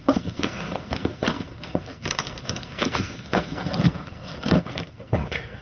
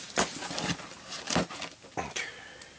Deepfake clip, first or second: first